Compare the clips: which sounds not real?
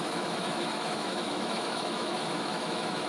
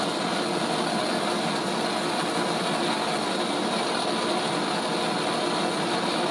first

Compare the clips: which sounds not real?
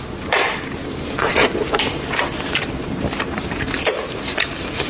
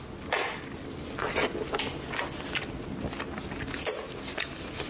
first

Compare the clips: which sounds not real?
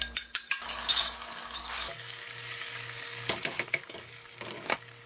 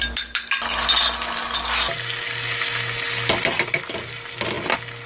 first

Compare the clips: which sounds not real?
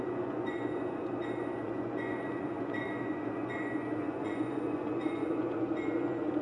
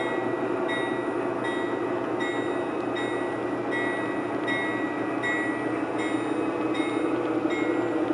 first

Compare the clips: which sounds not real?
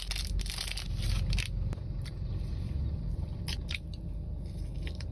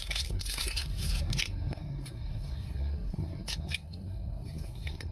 second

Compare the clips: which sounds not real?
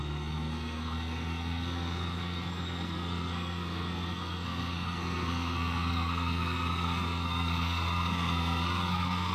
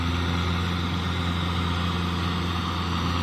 first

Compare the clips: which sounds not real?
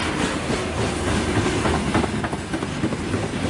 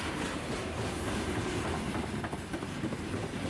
second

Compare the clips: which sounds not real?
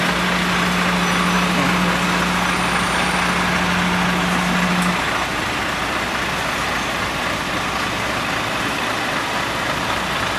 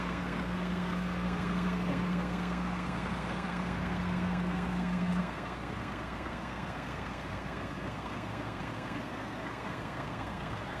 second